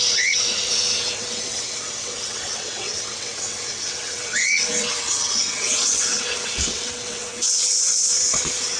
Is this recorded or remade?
remade